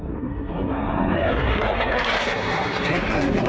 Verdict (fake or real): fake